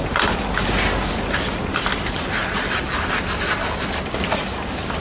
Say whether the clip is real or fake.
real